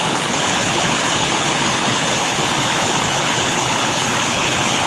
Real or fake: fake